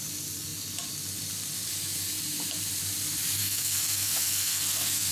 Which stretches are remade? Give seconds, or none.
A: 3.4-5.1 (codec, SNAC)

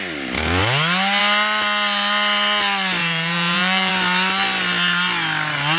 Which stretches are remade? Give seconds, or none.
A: 3.0-3.9 (vocoder, Vocos)